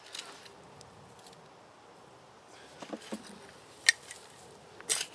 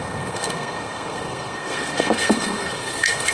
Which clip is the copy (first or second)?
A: second